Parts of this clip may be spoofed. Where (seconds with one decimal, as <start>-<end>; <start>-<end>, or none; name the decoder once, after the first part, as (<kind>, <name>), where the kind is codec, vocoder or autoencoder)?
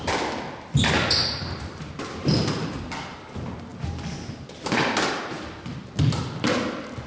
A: none